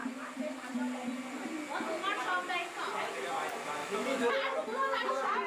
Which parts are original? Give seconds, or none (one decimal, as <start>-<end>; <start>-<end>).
0.0-3.8; 4.3-5.5